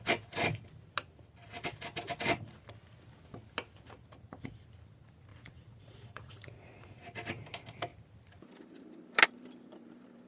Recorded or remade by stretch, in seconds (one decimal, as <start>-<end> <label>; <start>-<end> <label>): 0.0-5.3 recorded; 5.3-7.0 remade; 7.0-10.3 recorded